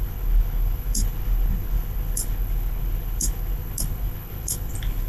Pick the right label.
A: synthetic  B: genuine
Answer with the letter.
A